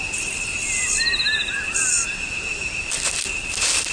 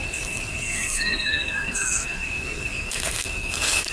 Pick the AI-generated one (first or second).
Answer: second